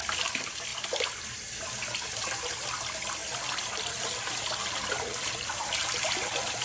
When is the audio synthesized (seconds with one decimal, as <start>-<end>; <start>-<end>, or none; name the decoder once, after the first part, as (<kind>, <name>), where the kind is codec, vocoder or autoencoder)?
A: none